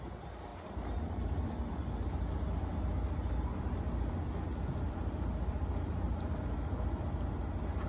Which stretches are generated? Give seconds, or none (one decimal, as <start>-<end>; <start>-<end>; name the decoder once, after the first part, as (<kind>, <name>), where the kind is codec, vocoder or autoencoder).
none